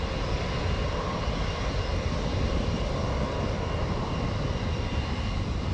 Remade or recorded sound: recorded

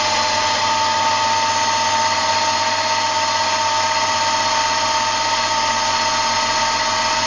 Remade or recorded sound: recorded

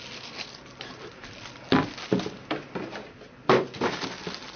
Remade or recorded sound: recorded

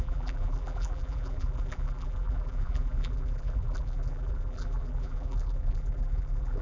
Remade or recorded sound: remade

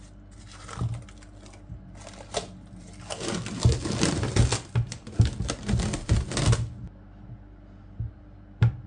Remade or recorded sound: recorded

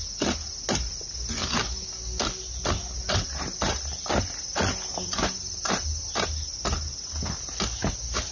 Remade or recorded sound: recorded